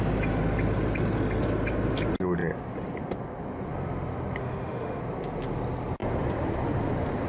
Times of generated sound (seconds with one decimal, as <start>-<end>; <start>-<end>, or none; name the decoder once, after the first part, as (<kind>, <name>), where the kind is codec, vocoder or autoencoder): 4.4-5.0 (autoencoder, DAC-VAE)